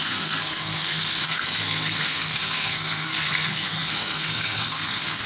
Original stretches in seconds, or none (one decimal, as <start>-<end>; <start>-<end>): none